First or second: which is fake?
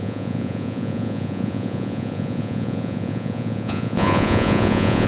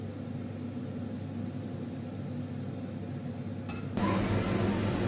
first